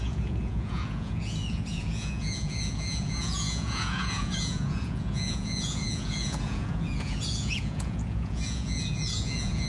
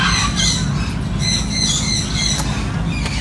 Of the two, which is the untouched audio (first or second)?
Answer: second